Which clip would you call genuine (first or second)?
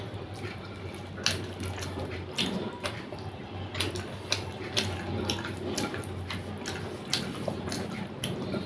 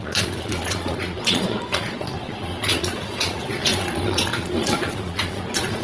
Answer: first